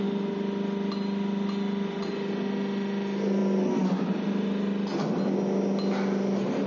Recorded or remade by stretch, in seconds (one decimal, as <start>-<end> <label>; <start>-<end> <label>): 0.0-6.7 recorded